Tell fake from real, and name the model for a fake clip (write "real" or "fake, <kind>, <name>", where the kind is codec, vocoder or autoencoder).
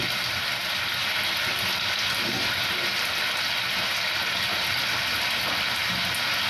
real